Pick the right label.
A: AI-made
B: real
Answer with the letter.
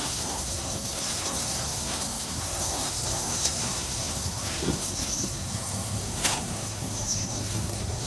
A